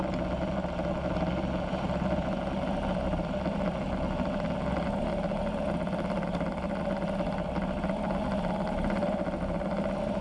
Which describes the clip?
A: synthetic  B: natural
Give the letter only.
B